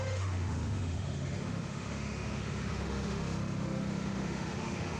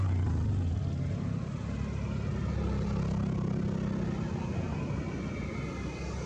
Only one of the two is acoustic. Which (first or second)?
second